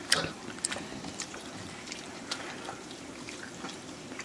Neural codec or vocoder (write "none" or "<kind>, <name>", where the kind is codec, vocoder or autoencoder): vocoder, BigVGAN v2